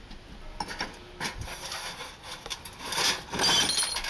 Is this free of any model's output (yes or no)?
yes